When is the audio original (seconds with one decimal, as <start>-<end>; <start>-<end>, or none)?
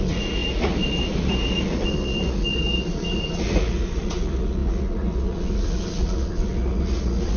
none